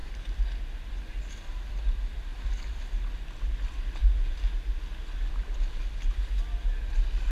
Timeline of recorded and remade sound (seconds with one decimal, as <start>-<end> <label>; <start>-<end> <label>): 0.0-2.3 recorded; 2.3-2.9 remade; 2.9-7.3 recorded